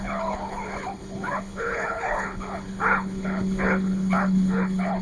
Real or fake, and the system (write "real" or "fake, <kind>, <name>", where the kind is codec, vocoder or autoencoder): fake, codec, HILCodec